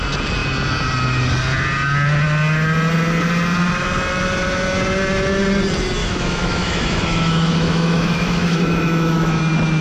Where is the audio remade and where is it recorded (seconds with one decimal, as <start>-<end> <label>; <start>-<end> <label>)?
0.0-6.0 recorded; 6.0-9.4 remade; 9.4-9.8 recorded